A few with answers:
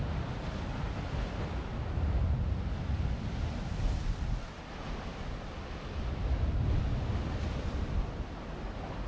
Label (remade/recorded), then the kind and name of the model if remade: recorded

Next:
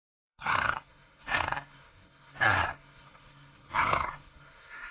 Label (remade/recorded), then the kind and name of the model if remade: remade, codec, SNAC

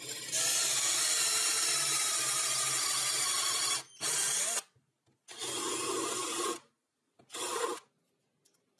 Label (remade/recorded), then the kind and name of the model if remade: recorded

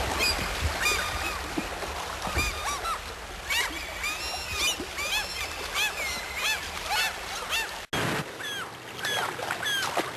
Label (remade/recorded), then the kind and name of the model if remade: recorded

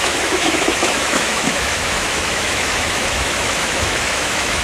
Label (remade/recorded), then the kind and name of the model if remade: remade, autoencoder, DAC-VAE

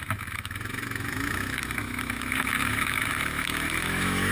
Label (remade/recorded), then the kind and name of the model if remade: remade, autoencoder, DAC-VAE